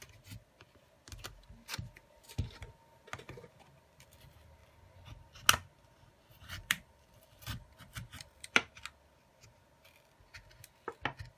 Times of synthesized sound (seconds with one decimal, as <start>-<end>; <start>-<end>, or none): 6.3-8.7